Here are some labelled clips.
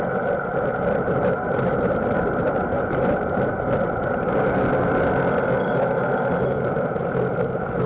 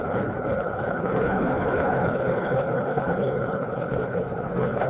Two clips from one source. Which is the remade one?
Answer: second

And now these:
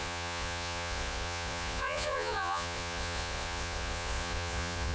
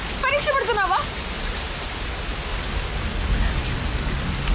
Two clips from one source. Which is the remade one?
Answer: first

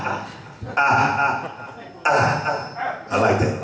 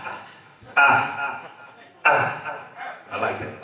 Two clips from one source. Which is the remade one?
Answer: second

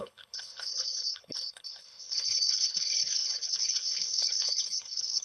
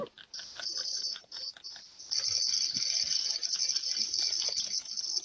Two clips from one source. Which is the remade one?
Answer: first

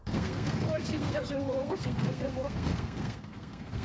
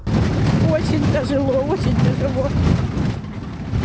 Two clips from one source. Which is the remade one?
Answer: first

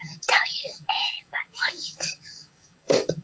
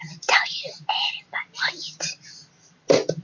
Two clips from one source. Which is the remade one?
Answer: first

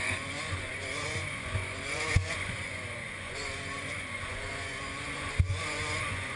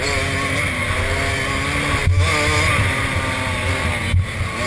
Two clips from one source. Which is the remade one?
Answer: first